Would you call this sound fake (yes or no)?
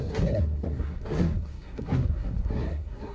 yes